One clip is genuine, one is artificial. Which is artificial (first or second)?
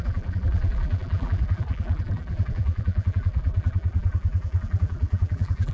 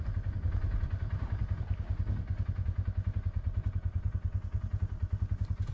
first